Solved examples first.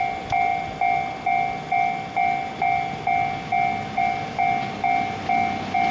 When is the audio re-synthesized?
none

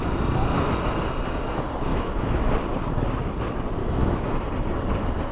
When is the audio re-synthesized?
1.9-2.5 (autoencoder, DAC-VAE); 3.8-4.4

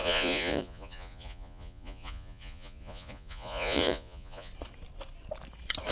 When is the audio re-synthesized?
0.0-4.5 (vocoder, Vocos)

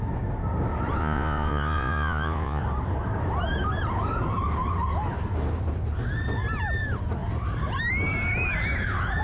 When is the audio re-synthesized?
1.0-2.6 (vocoder, Vocos)